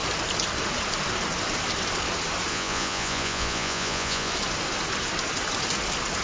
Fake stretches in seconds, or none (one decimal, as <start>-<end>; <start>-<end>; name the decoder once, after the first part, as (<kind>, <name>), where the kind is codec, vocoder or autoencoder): 2.5-4.3 (vocoder, Vocos)